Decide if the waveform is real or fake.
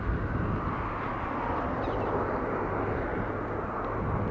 real